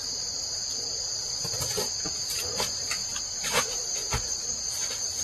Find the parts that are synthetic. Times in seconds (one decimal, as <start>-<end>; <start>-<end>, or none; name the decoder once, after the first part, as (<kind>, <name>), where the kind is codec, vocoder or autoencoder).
2.5-4.0 (vocoder, BigVGAN v2); 4.7-5.2

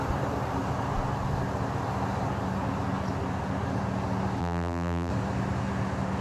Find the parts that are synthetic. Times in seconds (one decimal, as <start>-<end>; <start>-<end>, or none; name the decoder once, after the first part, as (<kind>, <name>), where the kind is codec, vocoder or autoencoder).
4.4-5.1 (vocoder, BigVGAN v2)

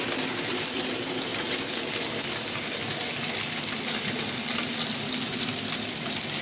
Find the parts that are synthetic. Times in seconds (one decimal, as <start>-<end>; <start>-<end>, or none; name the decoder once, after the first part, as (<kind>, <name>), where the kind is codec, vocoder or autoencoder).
0.0-1.3 (vocoder, BigVGAN v2); 3.4-4.7; 5.3-6.4

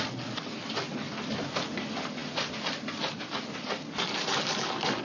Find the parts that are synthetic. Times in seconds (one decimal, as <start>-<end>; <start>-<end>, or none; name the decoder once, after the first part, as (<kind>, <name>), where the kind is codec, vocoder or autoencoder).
0.0-5.0 (vocoder, BigVGAN v2)

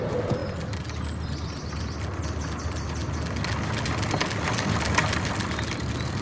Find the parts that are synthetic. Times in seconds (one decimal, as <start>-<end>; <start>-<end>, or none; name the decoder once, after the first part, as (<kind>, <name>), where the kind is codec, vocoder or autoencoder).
none

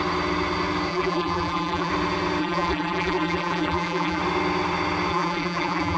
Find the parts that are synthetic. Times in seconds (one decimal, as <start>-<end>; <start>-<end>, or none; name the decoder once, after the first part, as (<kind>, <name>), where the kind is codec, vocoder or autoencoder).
0.9-1.9 (vocoder, BigVGAN v2); 2.4-4.2; 5.1-6.0

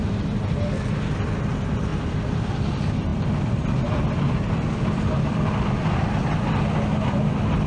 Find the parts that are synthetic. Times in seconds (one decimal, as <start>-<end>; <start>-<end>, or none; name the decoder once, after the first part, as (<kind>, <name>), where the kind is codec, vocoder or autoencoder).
0.0-0.9 (vocoder, BigVGAN v2); 3.1-6.1

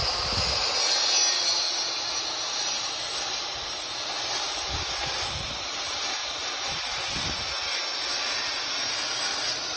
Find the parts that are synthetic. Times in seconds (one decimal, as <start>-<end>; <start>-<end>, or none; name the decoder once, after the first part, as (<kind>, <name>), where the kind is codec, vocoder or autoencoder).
2.2-9.8 (vocoder, BigVGAN v2)